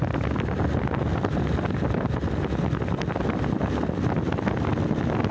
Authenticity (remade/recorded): recorded